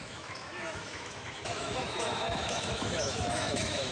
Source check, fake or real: fake